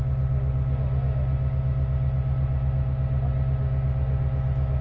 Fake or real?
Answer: real